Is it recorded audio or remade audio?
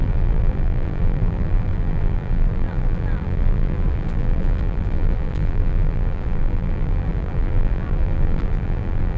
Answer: remade